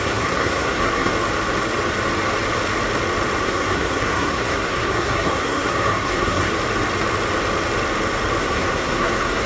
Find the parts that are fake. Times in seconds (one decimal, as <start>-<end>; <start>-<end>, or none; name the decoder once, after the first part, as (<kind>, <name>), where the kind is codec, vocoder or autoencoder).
0.0-1.1 (codec, SNAC); 3.4-6.5; 8.4-9.5